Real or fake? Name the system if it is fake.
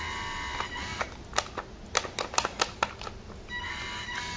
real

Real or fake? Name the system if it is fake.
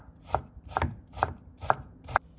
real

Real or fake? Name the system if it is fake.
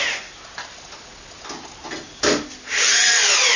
real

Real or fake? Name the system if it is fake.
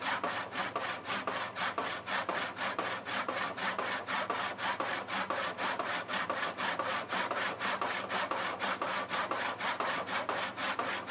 real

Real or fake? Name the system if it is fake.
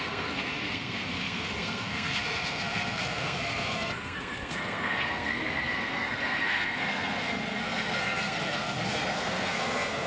fake, codec, SNAC